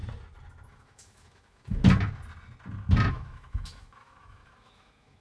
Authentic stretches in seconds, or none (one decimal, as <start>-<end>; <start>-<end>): 0.0-0.7; 1.8-3.1